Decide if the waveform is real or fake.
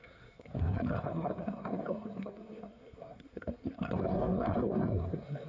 fake